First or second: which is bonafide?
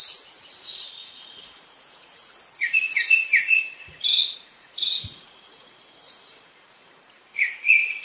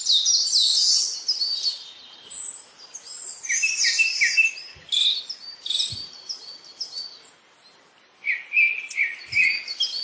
second